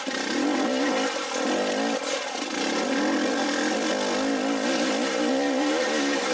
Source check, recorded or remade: recorded